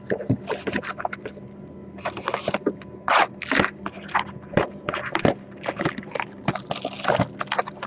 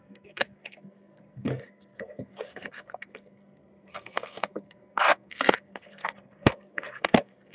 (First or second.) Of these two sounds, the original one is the first